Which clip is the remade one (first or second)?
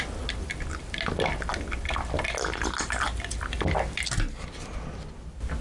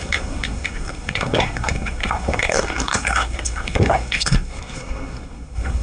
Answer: second